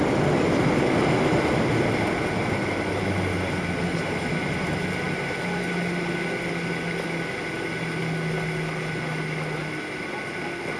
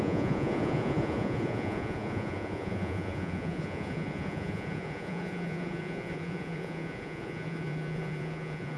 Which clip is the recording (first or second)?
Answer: first